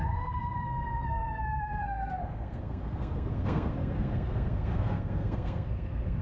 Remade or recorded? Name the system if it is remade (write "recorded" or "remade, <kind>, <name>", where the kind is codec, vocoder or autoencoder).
remade, codec, SNAC